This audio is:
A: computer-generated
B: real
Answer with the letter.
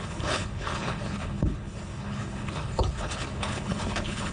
A